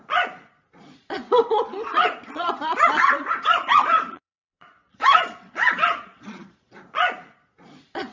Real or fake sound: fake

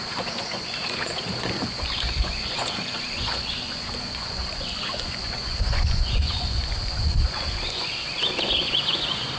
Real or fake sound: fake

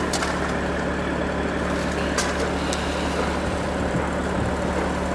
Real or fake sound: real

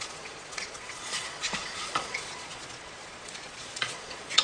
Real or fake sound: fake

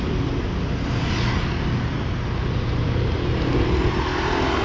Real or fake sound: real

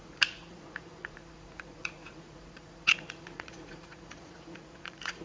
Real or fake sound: fake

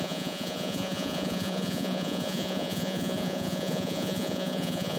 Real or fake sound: fake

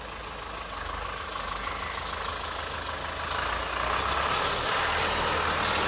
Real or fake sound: real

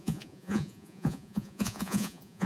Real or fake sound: fake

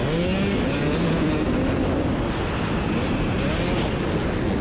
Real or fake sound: real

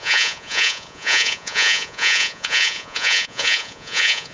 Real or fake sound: fake